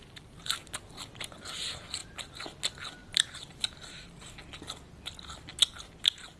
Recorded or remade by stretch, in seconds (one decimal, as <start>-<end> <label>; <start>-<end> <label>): 0.0-2.0 recorded; 2.0-2.6 remade; 2.6-3.0 recorded; 3.0-3.7 remade; 3.7-6.4 recorded